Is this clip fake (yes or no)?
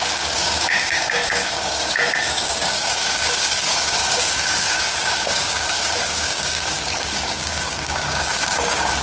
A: yes